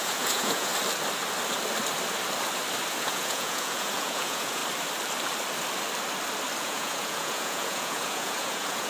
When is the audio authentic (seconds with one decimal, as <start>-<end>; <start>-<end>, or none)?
0.7-2.9; 4.6-6.6